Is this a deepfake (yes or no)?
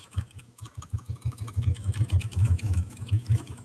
yes